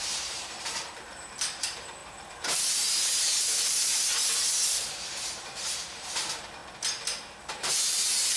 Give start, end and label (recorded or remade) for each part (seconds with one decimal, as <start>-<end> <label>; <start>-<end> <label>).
0.0-6.6 remade; 6.6-7.4 recorded; 7.4-8.4 remade